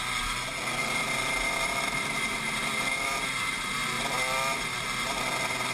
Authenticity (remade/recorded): remade